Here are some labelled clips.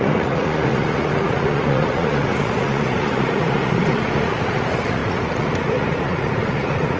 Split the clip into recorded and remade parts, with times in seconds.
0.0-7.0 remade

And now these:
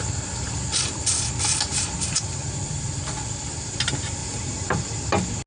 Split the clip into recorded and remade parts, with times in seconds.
0.0-1.7 recorded; 1.7-2.6 remade; 2.6-4.2 recorded; 4.2-4.8 remade; 4.8-5.5 recorded